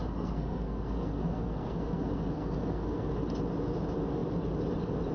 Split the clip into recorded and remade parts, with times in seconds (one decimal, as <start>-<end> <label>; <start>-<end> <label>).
0.0-3.1 remade; 3.1-5.1 recorded